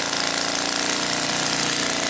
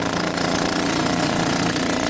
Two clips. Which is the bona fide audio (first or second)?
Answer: first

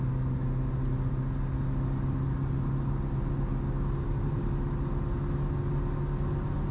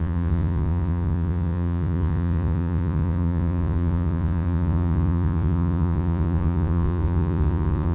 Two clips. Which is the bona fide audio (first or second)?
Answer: first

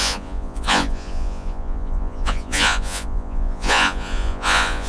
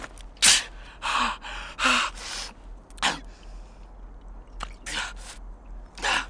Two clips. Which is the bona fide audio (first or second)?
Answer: second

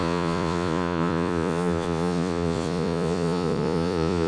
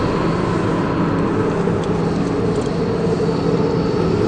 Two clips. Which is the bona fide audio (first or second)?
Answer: second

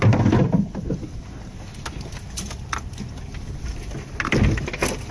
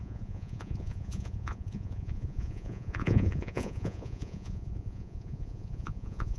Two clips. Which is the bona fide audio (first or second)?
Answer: first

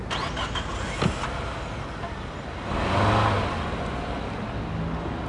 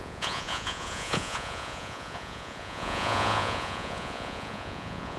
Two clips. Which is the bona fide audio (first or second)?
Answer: first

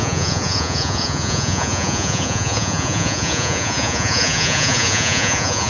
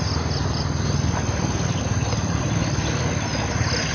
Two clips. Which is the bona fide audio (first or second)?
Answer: second